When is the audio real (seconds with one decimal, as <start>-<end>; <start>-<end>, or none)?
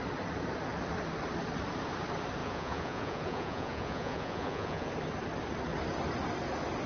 0.0-2.4; 4.9-6.9